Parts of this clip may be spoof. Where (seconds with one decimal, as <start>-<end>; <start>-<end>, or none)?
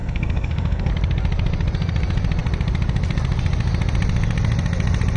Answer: 0.0-0.9